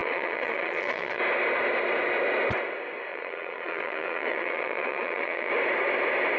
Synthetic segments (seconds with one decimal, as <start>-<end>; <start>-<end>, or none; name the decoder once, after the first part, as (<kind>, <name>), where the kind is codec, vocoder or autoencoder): 0.0-1.2 (vocoder, Vocos); 3.1-5.5